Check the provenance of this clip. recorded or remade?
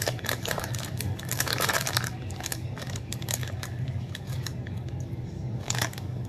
remade